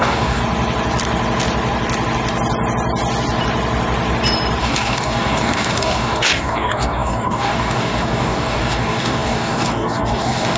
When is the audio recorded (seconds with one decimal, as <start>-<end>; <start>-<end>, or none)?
0.4-4.6